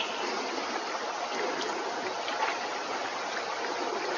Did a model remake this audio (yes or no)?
no